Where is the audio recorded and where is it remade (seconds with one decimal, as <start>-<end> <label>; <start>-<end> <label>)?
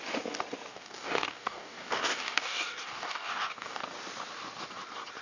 0.0-0.7 recorded; 0.7-3.8 remade; 3.8-5.2 recorded